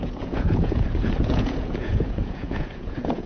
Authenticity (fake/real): fake